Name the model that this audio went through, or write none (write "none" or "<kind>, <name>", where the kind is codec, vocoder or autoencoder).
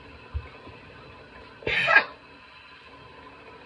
none